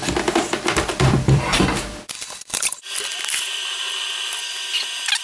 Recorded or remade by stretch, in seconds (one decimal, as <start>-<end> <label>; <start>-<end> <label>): 0.0-1.6 remade; 1.6-5.2 recorded